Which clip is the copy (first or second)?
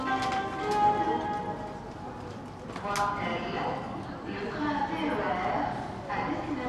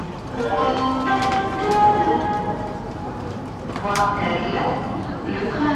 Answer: second